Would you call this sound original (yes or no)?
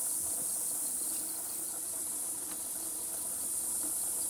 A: yes